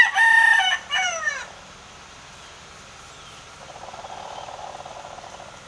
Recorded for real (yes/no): yes